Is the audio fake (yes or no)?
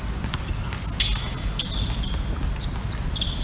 no